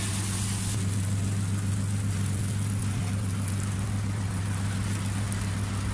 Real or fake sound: real